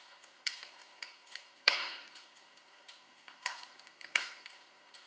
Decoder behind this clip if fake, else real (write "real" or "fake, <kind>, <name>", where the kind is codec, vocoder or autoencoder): fake, codec, SNAC